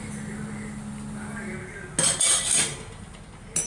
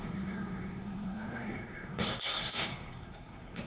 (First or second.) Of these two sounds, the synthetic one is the second